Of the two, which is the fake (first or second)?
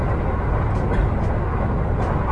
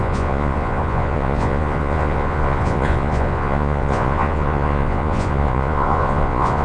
second